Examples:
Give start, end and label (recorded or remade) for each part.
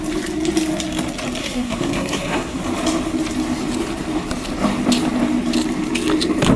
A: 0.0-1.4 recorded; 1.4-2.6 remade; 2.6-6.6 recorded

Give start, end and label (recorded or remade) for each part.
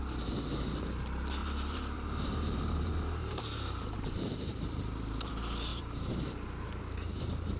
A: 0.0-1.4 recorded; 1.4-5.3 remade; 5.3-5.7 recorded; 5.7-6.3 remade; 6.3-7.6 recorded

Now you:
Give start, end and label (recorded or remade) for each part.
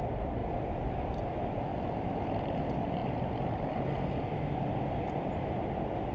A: 0.0-0.4 recorded; 0.4-1.0 remade; 1.0-3.0 recorded; 3.0-5.3 remade; 5.3-6.1 recorded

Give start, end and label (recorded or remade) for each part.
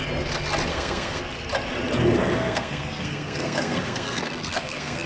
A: 0.0-0.7 recorded; 0.7-1.2 remade; 1.2-2.4 recorded; 2.4-5.1 remade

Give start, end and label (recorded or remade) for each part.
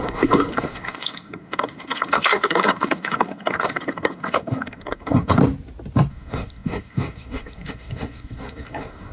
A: 0.0-5.4 remade; 5.4-6.1 recorded; 6.1-9.1 remade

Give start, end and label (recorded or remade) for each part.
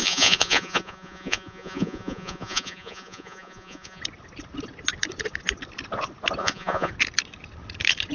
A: 0.0-4.0 remade; 4.0-6.4 recorded; 6.4-6.9 remade; 6.9-8.1 recorded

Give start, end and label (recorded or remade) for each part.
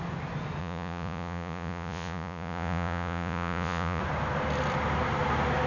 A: 0.0-0.6 recorded; 0.6-4.0 remade; 4.0-5.7 recorded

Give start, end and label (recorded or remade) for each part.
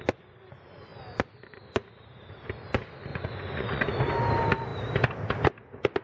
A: 0.0-3.1 recorded; 3.1-3.8 remade; 3.8-6.0 recorded